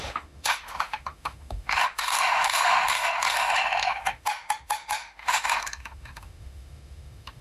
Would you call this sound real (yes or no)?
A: no